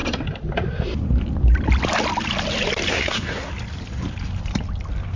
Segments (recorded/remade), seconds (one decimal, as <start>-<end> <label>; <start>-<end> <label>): 0.0-2.9 recorded; 2.9-3.5 remade; 3.5-5.2 recorded